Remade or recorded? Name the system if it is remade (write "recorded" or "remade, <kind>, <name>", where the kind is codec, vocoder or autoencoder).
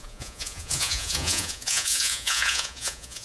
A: remade, vocoder, Vocos